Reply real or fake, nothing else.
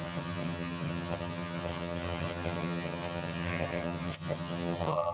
fake